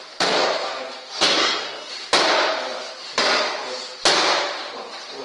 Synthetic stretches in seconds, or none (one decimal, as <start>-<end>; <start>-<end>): 1.4-1.9